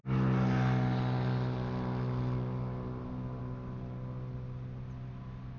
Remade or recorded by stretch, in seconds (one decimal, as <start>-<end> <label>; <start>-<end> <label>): 0.0-5.6 recorded